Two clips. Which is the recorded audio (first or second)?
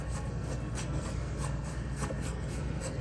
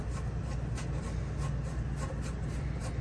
second